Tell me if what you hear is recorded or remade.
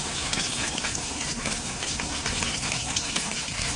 remade